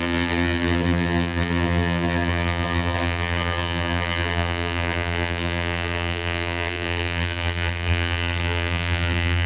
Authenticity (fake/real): fake